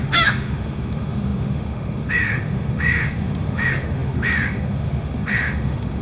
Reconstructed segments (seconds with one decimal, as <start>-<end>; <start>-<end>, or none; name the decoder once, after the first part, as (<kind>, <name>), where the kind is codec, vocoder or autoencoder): 0.0-6.0 (autoencoder, DAC-VAE)